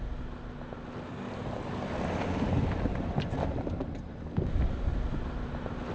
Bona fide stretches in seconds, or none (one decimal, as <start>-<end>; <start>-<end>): 0.0-5.9